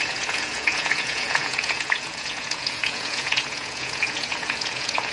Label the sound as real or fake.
fake